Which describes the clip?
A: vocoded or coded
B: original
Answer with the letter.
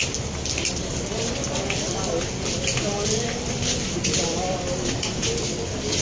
B